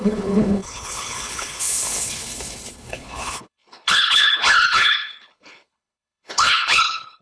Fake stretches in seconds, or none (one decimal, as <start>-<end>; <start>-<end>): 0.0-7.2